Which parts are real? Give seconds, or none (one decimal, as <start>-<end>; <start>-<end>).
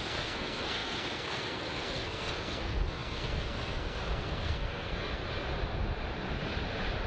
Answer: 5.2-7.1